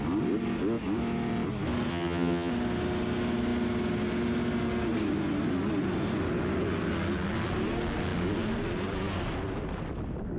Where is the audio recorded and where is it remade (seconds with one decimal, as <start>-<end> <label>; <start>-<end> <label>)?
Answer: 0.0-1.9 recorded; 1.9-2.5 remade; 2.5-10.4 recorded